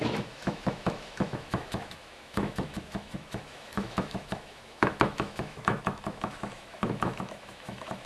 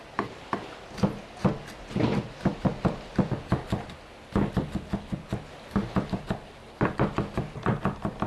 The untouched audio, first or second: second